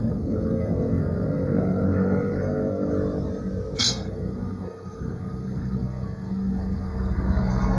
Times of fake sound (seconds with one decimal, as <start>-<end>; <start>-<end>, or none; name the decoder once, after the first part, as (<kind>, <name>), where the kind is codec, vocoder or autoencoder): 0.0-2.9 (codec, SNAC); 3.8-7.8